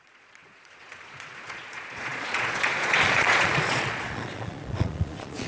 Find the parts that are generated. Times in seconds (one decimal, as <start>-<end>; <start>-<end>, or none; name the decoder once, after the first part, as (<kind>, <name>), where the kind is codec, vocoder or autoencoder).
0.0-5.5 (vocoder, Vocos)